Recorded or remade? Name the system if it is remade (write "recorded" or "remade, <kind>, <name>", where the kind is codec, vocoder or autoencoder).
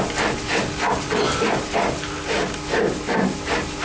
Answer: recorded